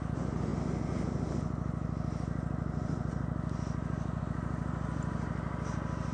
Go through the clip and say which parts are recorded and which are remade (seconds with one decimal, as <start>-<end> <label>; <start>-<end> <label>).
0.0-6.1 recorded